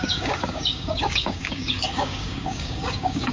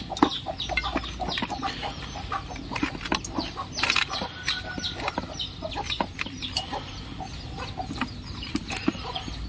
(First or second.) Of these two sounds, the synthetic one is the first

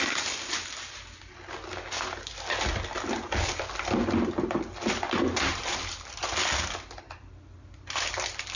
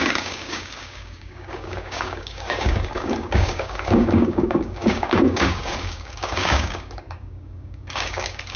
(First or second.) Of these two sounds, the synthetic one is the second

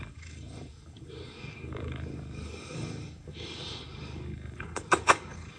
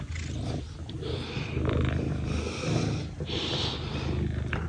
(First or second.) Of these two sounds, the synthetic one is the first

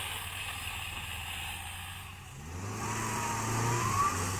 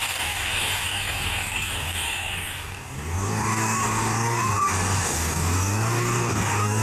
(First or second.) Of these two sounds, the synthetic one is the second